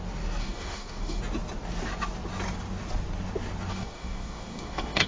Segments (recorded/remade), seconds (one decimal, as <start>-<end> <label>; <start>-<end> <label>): 0.0-0.4 recorded; 0.4-1.2 remade; 1.2-3.7 recorded; 3.7-5.1 remade